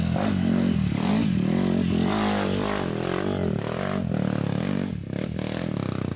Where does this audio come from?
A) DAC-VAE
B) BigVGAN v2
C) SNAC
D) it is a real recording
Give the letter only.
D